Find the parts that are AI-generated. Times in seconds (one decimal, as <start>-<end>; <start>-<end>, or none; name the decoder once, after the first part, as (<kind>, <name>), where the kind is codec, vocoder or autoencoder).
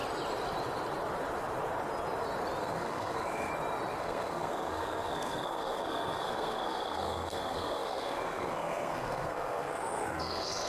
2.6-3.5 (codec, SNAC); 4.0-10.7